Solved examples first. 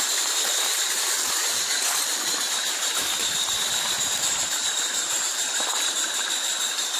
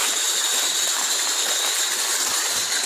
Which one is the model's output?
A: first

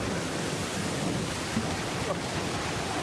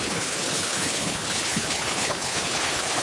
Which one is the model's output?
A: second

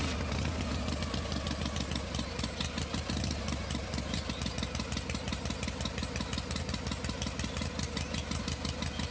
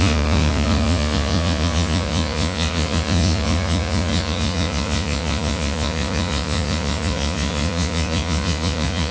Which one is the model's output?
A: second